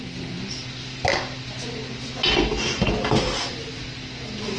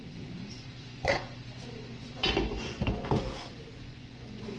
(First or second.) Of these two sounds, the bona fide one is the first